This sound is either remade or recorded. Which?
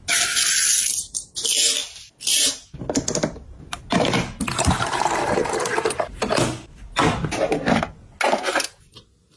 recorded